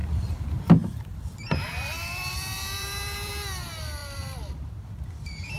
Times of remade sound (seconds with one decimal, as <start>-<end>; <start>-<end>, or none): 0.0-0.7; 1.1-3.3; 4.0-5.6